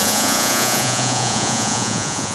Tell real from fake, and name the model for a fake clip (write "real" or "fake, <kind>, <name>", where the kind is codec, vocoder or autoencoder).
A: fake, vocoder, Vocos